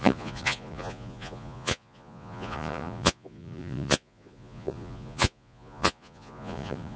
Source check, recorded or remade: remade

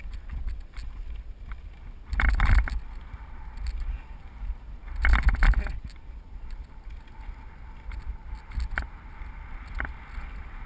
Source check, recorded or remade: recorded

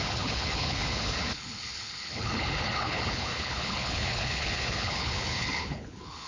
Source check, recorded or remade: remade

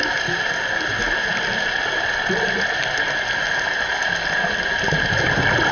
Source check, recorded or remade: recorded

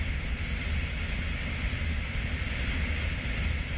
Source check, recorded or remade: recorded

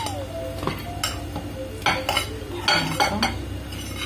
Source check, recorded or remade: recorded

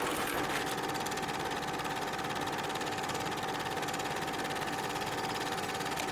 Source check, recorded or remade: recorded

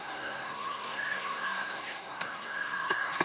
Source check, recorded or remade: remade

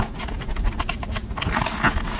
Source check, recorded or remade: remade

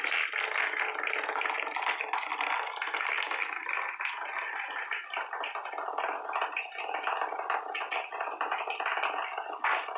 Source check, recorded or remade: recorded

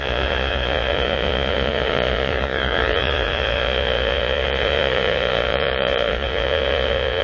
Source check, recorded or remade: remade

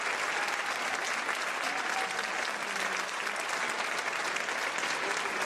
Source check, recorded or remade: recorded